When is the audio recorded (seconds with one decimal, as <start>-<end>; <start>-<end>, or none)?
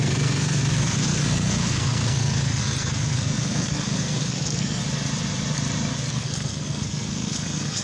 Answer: 4.8-6.1